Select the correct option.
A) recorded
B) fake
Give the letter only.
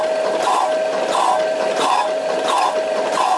A